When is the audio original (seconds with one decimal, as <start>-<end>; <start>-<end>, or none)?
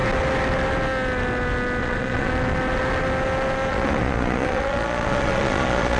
0.0-1.8; 2.3-3.7